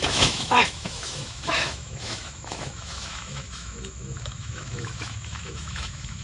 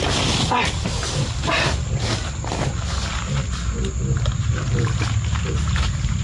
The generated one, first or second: first